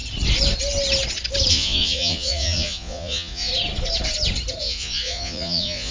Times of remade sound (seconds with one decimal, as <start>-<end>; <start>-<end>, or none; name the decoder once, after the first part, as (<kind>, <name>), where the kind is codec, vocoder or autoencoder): 1.5-3.5 (vocoder, Vocos); 4.6-5.9